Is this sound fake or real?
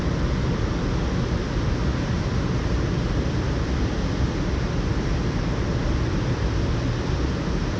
real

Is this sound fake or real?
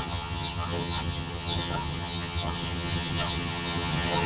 fake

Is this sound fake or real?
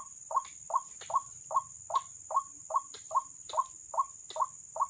real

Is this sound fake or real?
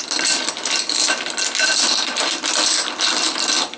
real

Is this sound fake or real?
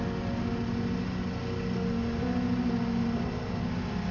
real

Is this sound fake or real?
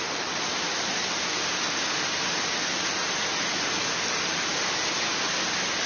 real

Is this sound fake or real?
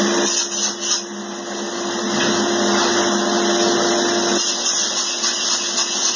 real